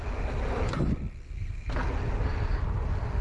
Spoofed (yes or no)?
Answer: no